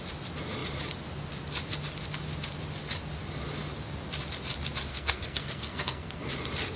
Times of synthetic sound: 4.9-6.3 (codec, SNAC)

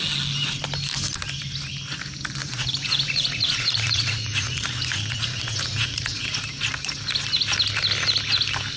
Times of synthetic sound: 2.4-6.2 (vocoder, Vocos)

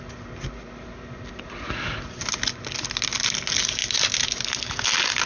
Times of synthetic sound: none

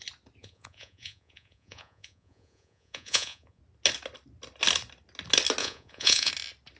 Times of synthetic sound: 0.4-3.6 (vocoder, Vocos); 5.6-6.3

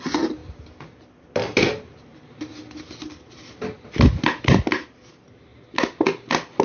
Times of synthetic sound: none

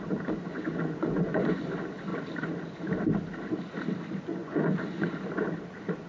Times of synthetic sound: 0.5-1.6 (vocoder, Vocos); 4.3-5.2

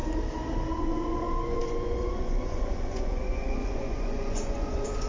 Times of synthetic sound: 0.7-5.1 (vocoder, Vocos)

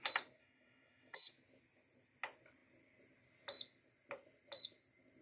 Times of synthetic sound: 0.4-1.3 (autoencoder, DAC-VAE)